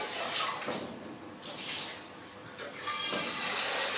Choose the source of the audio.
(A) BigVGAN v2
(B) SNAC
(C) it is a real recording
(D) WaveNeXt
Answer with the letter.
C